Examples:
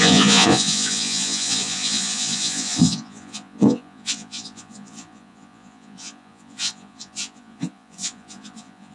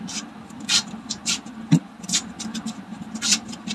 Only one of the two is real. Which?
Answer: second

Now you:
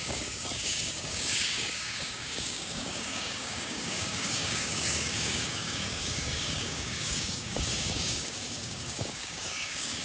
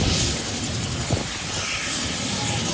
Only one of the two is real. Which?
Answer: second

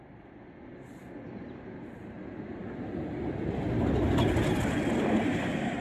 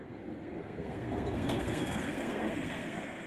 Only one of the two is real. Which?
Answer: first